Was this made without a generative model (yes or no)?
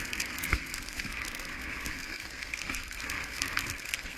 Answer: no